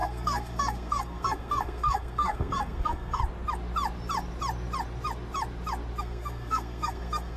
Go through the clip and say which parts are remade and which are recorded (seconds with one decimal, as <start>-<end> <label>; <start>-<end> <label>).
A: 0.0-3.2 remade; 3.2-6.0 recorded; 6.0-7.4 remade